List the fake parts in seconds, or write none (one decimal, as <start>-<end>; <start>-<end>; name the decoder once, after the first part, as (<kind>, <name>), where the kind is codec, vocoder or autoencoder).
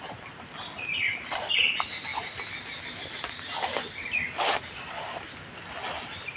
none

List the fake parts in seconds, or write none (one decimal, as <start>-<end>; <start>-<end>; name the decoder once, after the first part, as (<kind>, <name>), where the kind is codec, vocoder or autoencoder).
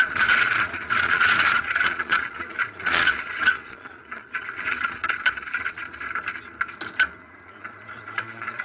0.0-5.8 (vocoder, Vocos); 7.2-8.6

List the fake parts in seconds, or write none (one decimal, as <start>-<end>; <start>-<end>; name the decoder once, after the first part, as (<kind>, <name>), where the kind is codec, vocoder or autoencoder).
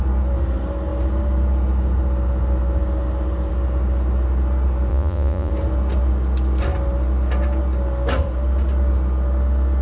4.9-5.5 (vocoder, Vocos)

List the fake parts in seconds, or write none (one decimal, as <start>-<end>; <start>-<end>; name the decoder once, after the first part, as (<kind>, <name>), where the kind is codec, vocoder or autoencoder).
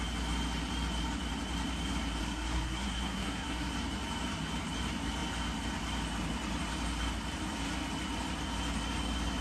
2.2-3.7 (codec, SNAC)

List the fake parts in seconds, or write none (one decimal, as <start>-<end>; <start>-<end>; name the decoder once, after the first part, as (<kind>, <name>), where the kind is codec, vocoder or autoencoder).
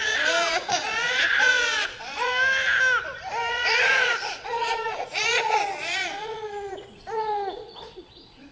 0.0-2.3 (vocoder, Vocos); 3.5-8.5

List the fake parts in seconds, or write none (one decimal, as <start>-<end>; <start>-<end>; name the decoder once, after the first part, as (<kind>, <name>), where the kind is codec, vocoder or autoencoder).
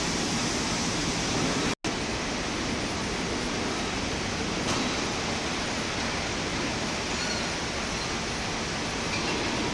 6.5-7.1 (vocoder, BigVGAN v2)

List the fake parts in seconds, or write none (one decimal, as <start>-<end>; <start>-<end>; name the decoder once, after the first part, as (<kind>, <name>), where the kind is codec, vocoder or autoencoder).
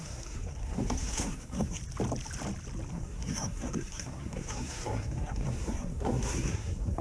0.0-1.8 (codec, SNAC); 2.9-7.0